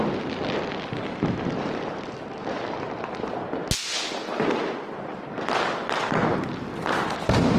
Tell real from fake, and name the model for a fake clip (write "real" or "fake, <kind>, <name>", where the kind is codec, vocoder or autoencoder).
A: real